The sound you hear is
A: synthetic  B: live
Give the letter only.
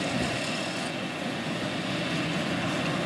A